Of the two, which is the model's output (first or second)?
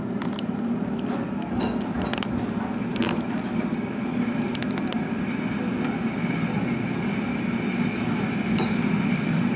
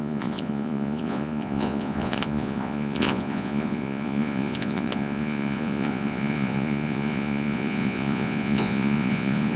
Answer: second